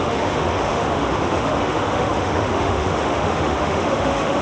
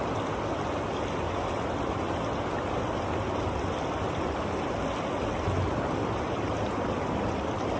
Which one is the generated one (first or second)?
first